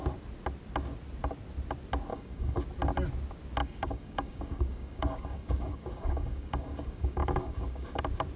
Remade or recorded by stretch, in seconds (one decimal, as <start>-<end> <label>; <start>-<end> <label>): 0.0-2.1 recorded; 2.1-2.6 remade; 2.6-3.6 recorded; 3.6-8.0 remade; 8.0-8.4 recorded